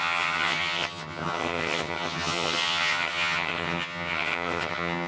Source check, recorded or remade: remade